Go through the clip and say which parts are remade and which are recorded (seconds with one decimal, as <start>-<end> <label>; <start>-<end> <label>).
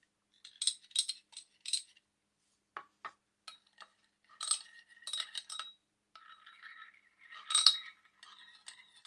0.0-9.1 recorded